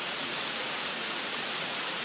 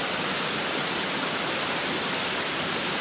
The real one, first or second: second